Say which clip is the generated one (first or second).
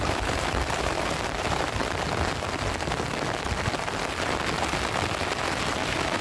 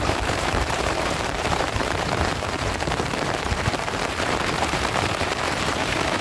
second